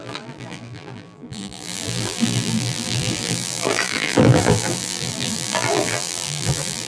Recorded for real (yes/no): no